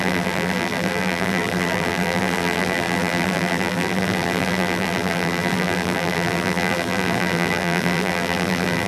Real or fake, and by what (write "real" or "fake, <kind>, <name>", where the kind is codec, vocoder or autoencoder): fake, vocoder, BigVGAN v2